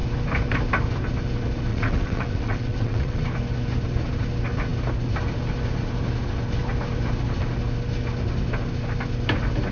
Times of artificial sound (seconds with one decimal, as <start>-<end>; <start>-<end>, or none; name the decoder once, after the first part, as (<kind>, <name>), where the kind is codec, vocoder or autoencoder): 1.7-3.2 (vocoder, WaveNeXt)